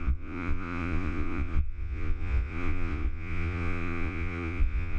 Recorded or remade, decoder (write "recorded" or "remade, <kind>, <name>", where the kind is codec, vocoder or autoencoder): remade, vocoder, Vocos